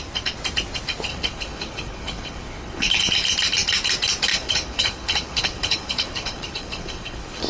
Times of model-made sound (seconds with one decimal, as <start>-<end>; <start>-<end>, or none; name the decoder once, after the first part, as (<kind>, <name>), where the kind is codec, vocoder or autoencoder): 1.1-3.0 (codec, HILCodec); 4.3-7.5

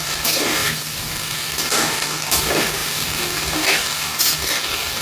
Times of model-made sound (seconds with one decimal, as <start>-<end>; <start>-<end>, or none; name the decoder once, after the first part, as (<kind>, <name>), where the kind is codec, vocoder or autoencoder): 0.0-5.0 (codec, DAC)

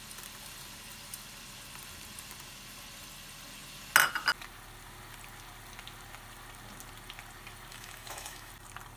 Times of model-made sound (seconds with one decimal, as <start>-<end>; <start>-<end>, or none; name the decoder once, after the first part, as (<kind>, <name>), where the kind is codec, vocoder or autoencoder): 7.7-8.5 (autoencoder, DAC-VAE)

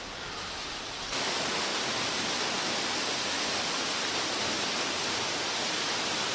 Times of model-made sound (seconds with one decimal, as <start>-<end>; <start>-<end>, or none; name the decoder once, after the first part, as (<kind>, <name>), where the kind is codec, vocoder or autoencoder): none

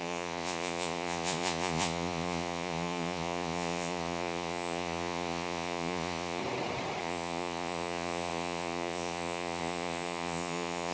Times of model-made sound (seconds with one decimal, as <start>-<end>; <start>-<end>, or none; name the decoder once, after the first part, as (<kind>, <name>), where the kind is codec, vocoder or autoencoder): 0.0-6.4 (vocoder, Vocos); 7.0-10.9

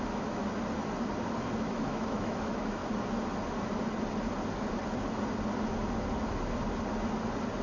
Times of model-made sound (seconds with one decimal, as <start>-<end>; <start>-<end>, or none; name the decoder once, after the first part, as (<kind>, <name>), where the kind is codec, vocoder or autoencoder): 0.0-0.4 (autoencoder, DAC-VAE); 1.6-2.8

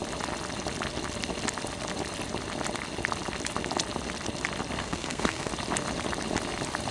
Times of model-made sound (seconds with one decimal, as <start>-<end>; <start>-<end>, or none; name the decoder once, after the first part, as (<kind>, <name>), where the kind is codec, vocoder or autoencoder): 4.8-5.5 (codec, SNAC)